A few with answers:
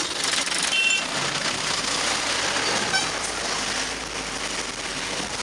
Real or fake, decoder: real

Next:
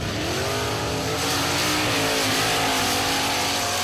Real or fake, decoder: real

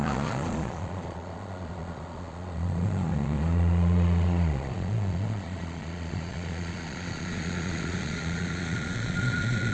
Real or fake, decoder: fake, vocoder, Vocos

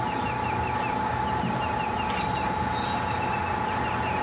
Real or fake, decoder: real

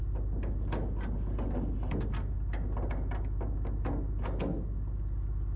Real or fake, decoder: real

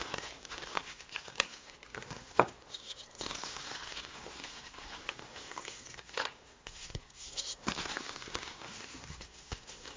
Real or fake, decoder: fake, codec, SNAC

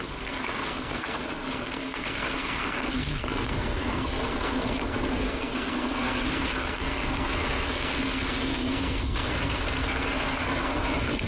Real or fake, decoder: fake, codec, SNAC